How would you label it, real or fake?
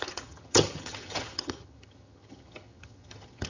fake